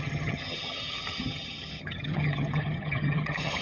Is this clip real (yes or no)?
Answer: no